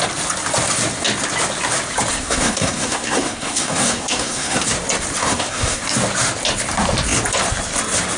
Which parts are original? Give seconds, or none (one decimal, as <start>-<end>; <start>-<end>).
0.0-2.1; 4.6-5.2; 5.8-8.2